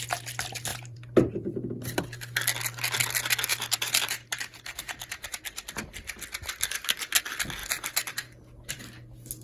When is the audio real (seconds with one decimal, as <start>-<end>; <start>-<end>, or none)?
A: 0.0-0.7; 2.0-3.5; 5.4-7.6; 8.1-9.4